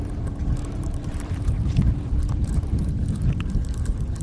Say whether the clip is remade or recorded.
remade